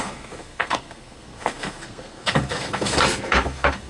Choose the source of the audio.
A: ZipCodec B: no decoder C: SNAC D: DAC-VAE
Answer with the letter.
C